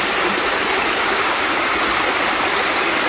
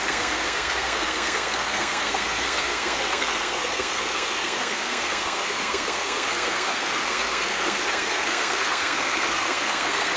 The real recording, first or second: first